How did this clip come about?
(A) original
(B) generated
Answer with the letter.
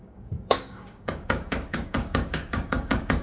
B